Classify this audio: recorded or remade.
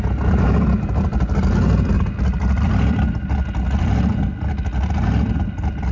recorded